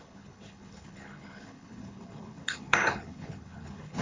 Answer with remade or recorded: remade